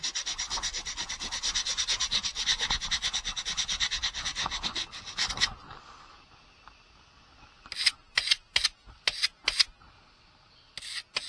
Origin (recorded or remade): recorded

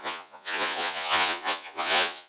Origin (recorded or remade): remade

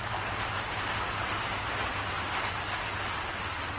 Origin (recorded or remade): recorded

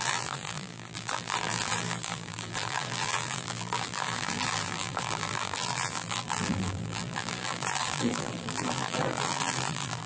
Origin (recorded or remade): remade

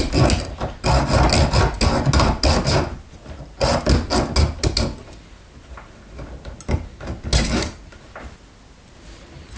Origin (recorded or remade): recorded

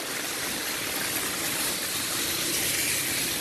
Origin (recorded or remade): recorded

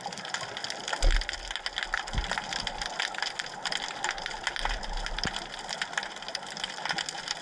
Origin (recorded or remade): recorded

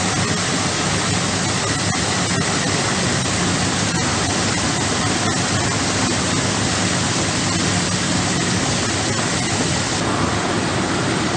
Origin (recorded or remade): recorded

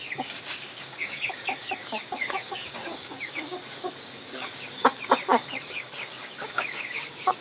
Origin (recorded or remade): remade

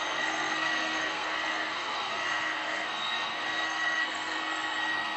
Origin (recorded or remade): remade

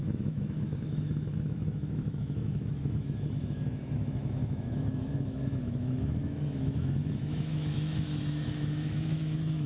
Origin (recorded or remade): remade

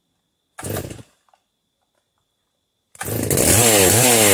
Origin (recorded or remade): recorded